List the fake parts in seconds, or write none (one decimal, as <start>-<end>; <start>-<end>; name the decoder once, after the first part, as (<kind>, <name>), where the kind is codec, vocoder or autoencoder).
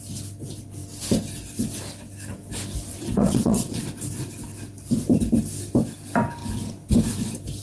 2.9-3.9 (vocoder, WaveNeXt)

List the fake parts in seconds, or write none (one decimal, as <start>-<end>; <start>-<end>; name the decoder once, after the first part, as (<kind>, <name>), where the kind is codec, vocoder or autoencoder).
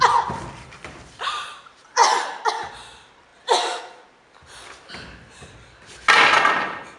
none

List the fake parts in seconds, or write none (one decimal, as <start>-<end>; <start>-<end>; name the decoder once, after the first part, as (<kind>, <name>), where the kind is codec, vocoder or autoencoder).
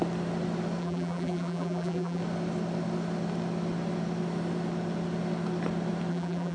0.8-2.2 (vocoder, BigVGAN v2); 6.1-6.5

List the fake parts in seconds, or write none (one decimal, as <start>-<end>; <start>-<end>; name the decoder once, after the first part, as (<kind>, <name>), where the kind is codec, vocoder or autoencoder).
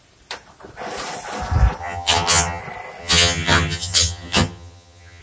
1.8-2.6 (vocoder, HiFi-GAN); 3.0-5.2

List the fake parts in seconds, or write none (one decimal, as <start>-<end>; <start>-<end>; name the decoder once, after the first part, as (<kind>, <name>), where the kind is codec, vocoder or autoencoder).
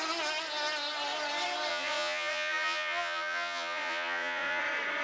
1.7-4.6 (vocoder, Vocos)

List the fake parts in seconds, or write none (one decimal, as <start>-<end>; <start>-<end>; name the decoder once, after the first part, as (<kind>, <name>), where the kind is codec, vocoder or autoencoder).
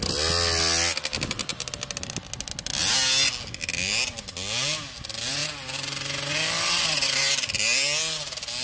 none